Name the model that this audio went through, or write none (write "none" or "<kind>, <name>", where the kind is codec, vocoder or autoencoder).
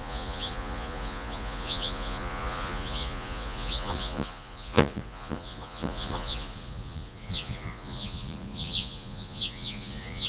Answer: vocoder, Vocos